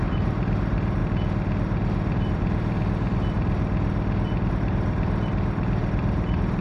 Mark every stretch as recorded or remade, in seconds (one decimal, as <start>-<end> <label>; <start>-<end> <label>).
0.0-1.0 remade; 1.0-4.5 recorded; 4.5-6.6 remade

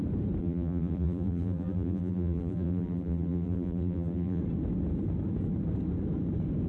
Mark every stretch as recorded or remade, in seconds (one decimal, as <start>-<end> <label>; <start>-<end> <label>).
0.0-0.4 recorded; 0.4-4.4 remade; 4.4-6.7 recorded